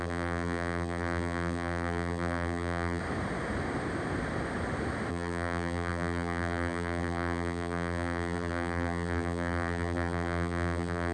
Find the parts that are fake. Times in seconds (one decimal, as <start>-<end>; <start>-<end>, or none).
0.0-3.0; 5.1-11.1